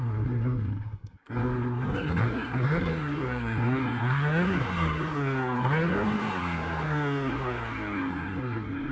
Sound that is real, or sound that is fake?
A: fake